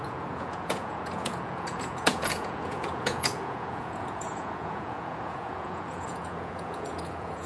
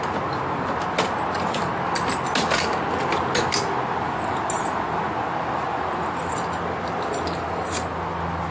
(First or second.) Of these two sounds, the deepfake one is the first